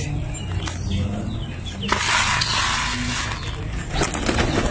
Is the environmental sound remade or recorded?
recorded